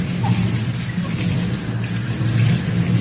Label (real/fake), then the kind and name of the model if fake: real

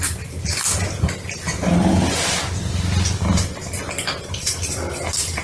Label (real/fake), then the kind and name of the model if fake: real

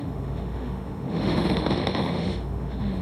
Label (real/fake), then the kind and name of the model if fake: fake, autoencoder, DAC-VAE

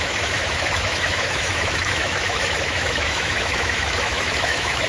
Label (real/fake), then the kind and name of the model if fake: fake, autoencoder, DAC-VAE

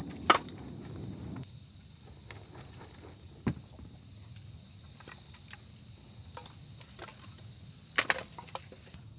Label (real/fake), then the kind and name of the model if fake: real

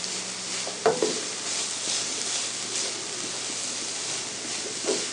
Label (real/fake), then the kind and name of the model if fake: real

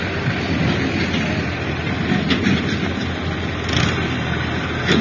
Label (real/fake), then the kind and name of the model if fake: real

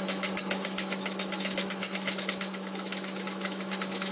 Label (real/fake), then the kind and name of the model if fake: fake, autoencoder, DAC-VAE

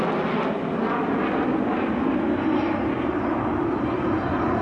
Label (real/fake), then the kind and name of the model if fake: real